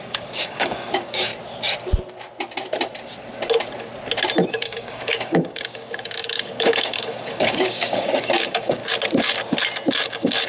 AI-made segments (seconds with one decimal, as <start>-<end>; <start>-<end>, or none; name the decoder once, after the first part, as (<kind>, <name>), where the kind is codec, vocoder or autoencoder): 0.0-1.3 (codec, DAC); 4.5-8.8; 9.9-10.5